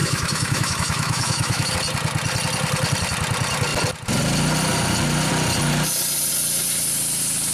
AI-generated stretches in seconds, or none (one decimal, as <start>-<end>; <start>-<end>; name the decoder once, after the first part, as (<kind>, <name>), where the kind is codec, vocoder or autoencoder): 0.0-1.7 (autoencoder, DAC-VAE)